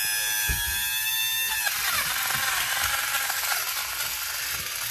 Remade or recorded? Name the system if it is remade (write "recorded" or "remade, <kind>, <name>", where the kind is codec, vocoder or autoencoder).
recorded